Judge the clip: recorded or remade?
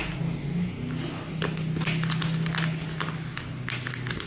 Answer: recorded